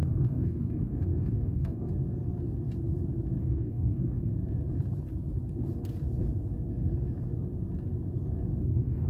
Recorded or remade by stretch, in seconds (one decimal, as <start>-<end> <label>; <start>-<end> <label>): 0.0-1.9 remade; 1.9-3.4 recorded; 3.4-4.3 remade; 4.3-8.6 recorded; 8.6-9.1 remade